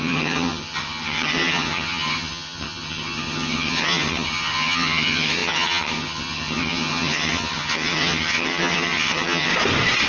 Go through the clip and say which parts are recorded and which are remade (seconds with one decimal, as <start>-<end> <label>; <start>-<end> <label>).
0.0-9.5 remade; 9.5-10.1 recorded

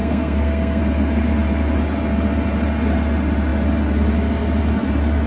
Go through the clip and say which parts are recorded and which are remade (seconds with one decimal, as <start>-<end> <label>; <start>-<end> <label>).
0.0-0.8 remade; 0.8-5.3 recorded

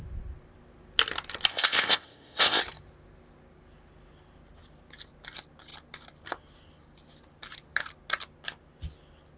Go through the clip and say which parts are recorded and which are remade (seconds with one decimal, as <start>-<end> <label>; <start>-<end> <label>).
0.0-1.5 recorded; 1.5-2.6 remade; 2.6-9.4 recorded

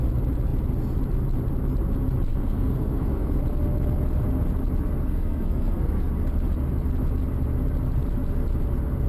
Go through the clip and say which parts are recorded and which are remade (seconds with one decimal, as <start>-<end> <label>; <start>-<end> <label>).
0.0-2.3 recorded; 2.3-3.4 remade; 3.4-5.0 recorded; 5.0-6.1 remade; 6.1-9.1 recorded

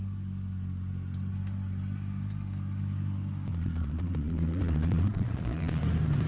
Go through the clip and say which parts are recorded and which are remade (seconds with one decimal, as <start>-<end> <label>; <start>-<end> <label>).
0.0-3.5 recorded; 3.5-5.8 remade; 5.8-6.3 recorded